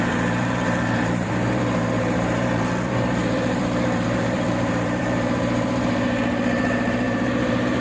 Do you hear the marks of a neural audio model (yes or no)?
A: yes